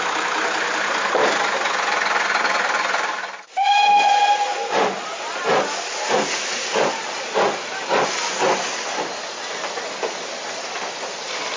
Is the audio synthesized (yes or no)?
no